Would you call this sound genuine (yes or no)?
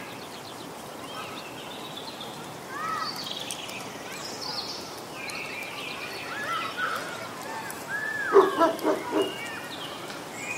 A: yes